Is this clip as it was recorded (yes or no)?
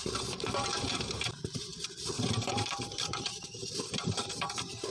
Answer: no